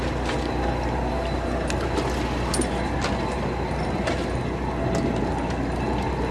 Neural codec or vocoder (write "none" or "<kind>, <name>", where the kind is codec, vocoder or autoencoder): none